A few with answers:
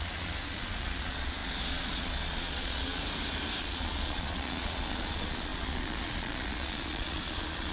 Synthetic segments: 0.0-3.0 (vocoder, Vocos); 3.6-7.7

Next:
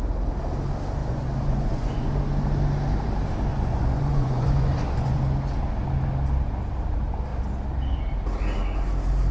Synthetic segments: 1.0-2.1 (vocoder, Vocos); 3.5-5.2

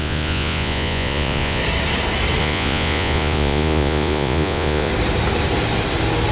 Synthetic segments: 0.0-1.6 (vocoder, Vocos); 2.4-4.9

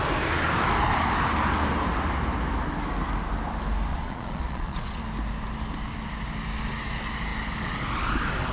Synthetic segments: 3.9-5.0 (vocoder, Vocos)

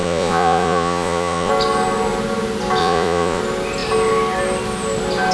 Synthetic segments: 0.0-1.5 (vocoder, Vocos); 2.8-3.4